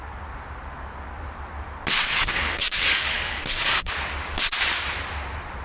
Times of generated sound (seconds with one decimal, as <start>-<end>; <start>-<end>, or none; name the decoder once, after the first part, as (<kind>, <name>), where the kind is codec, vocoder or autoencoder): 2.1-3.9 (codec, DAC)